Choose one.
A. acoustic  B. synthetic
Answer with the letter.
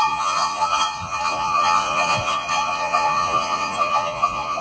B